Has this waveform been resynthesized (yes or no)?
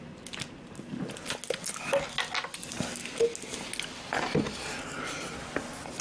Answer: no